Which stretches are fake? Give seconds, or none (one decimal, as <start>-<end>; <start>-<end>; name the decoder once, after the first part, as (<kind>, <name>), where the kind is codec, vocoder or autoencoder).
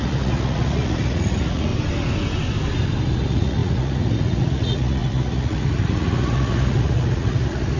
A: 0.0-1.7 (vocoder, Vocos); 3.1-7.8